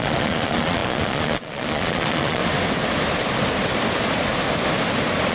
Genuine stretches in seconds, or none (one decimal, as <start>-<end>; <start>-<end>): 2.4-5.3